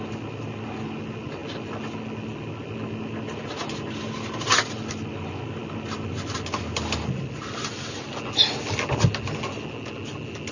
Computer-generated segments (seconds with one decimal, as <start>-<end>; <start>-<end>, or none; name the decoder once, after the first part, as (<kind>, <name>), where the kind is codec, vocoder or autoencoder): none